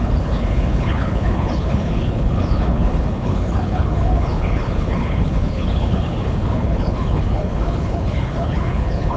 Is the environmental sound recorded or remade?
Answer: remade